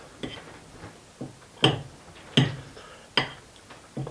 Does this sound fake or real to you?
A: real